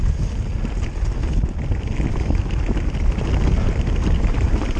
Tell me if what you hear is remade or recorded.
recorded